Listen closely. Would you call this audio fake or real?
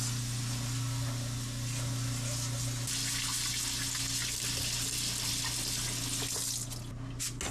real